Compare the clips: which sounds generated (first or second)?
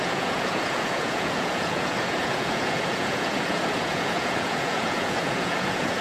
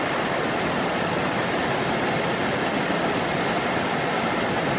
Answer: first